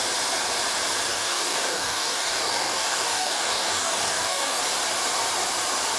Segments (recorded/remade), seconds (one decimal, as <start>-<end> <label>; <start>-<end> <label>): 0.0-1.1 recorded; 1.1-4.6 remade; 4.6-6.0 recorded